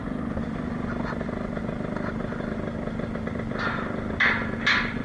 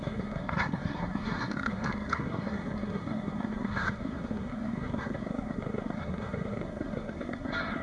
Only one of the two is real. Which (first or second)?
first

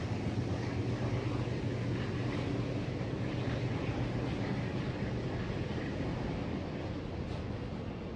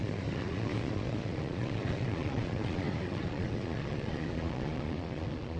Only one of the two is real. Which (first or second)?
first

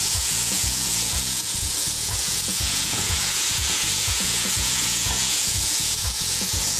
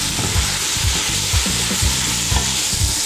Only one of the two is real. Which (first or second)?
second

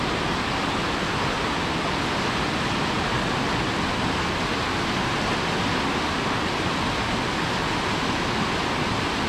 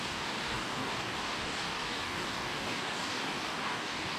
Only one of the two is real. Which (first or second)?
first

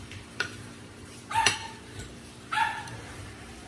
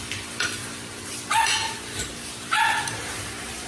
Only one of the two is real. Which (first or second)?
second